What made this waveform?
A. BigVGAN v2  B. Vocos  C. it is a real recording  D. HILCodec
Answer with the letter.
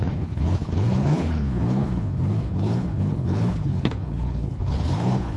D